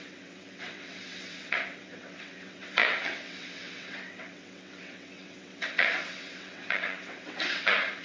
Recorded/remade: remade